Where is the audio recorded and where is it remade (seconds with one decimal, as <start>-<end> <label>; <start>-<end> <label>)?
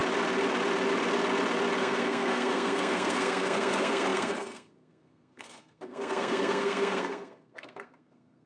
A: 0.0-1.8 recorded; 1.8-8.5 remade